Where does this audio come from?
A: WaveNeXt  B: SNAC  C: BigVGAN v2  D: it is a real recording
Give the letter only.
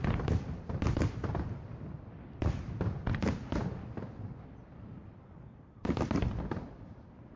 C